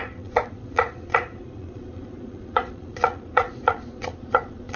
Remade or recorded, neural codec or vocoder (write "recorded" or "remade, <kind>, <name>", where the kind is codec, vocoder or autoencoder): remade, vocoder, Vocos